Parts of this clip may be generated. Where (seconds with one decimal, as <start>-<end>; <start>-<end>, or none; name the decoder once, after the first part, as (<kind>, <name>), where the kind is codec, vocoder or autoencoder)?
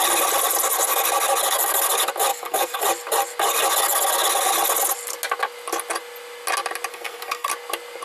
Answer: 2.3-2.8 (codec, SNAC); 6.9-7.5